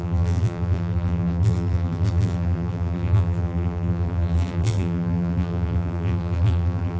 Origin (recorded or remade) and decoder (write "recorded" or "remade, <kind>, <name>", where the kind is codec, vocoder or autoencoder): remade, vocoder, BigVGAN v2